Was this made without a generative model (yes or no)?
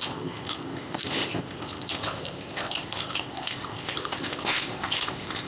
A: no